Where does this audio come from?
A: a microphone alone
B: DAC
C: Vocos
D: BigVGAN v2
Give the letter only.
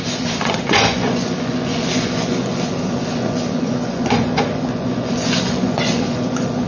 C